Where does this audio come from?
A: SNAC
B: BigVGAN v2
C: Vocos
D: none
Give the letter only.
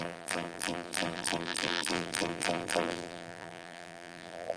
B